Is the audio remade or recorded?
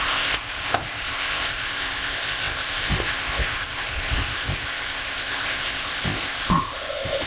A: remade